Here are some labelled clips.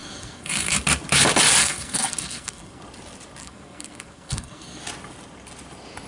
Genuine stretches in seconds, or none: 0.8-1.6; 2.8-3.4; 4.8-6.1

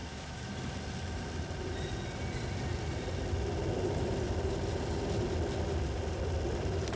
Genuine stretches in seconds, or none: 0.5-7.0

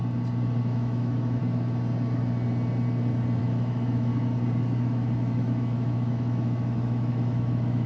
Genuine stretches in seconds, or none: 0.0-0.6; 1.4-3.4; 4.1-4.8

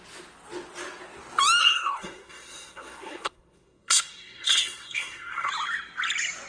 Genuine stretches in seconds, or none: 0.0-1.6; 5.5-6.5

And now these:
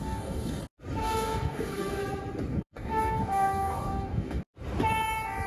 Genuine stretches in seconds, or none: 0.6-1.0; 2.0-2.5; 4.4-5.5

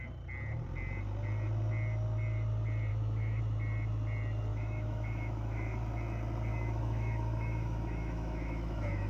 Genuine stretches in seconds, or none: 0.0-2.9; 3.4-4.5; 5.8-6.5

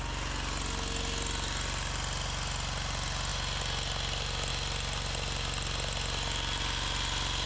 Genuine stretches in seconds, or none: 0.0-7.5